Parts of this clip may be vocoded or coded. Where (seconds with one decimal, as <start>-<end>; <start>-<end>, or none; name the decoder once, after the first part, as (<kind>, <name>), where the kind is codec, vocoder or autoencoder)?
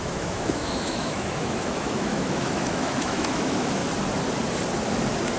0.0-3.8 (autoencoder, DAC-VAE)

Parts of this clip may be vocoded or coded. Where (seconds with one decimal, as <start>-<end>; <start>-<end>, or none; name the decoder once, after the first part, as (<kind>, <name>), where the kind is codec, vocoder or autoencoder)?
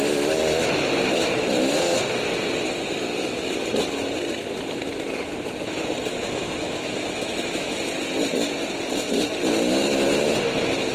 6.1-7.8 (autoencoder, DAC-VAE)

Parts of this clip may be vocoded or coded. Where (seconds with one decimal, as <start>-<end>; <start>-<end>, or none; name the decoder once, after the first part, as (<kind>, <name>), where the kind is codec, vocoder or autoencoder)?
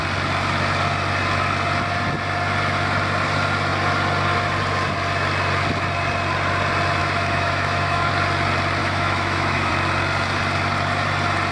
7.0-8.1 (autoencoder, DAC-VAE); 8.8-9.7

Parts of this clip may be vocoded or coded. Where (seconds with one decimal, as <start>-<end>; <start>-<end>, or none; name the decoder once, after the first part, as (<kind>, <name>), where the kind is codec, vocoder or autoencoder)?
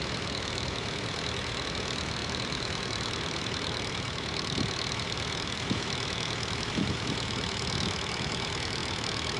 0.0-9.4 (autoencoder, DAC-VAE)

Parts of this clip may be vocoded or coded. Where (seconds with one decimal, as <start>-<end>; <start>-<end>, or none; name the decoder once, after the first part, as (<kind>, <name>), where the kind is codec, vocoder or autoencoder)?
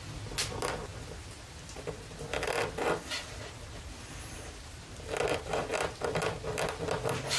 none